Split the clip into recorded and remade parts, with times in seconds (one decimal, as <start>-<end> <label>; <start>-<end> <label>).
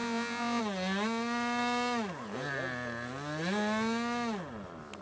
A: 0.0-0.6 remade; 0.6-5.0 recorded